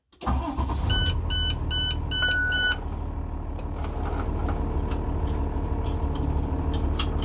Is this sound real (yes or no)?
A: yes